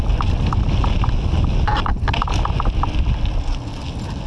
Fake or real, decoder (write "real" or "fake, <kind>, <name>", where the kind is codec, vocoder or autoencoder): real